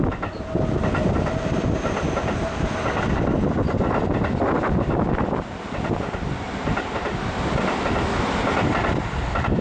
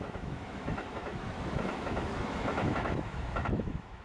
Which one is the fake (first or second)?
second